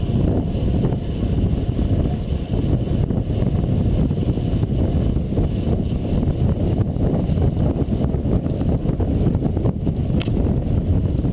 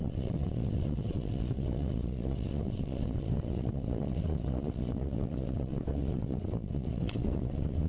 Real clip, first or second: first